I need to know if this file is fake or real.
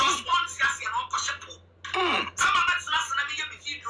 real